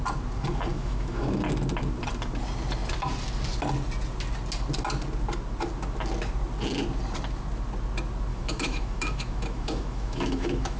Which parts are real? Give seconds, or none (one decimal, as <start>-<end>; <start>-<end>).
0.0-0.7; 1.4-8.3